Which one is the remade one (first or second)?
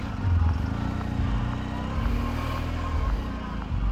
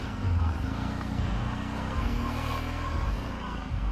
second